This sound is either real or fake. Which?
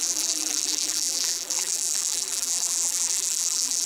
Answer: fake